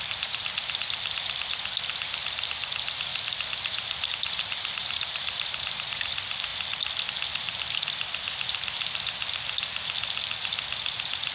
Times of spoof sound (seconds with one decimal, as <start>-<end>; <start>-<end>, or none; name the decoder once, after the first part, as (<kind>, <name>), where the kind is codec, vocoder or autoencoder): 4.8-6.1 (vocoder, BigVGAN v2)